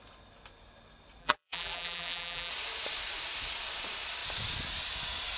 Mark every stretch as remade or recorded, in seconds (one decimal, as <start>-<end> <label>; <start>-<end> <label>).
0.0-1.2 recorded; 1.2-2.5 remade; 2.5-5.4 recorded